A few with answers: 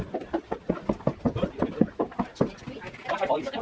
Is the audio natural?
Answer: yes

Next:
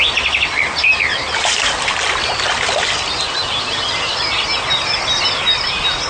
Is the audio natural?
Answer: yes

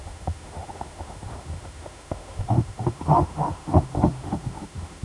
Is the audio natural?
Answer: no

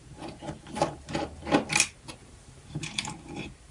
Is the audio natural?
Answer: no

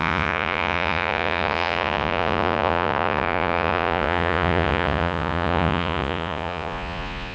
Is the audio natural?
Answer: no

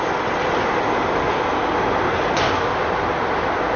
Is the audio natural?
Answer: yes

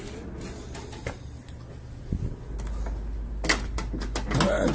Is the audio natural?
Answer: yes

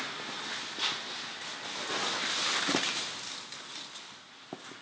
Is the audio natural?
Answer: yes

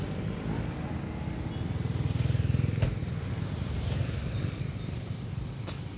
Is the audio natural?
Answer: yes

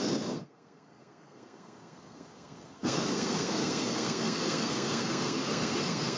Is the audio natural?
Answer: no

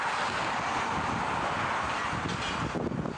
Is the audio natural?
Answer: yes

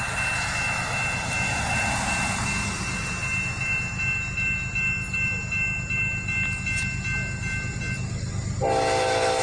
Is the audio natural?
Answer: yes